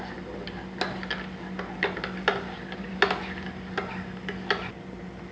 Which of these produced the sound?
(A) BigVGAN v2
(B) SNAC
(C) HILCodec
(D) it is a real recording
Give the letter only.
D